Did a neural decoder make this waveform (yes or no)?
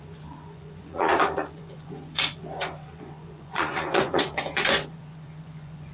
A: yes